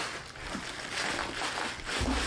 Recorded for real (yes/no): yes